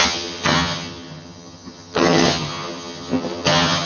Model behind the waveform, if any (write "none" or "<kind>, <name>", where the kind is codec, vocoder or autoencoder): vocoder, HiFi-GAN